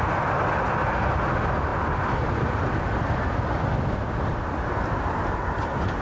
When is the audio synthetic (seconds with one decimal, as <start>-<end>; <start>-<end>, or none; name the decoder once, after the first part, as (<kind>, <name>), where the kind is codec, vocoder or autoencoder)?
none